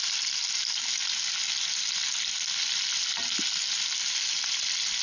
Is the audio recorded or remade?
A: recorded